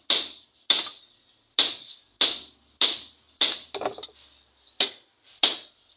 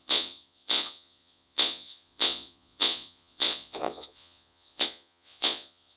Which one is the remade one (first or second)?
second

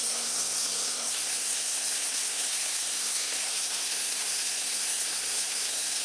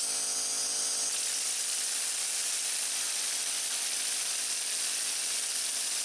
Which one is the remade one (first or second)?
first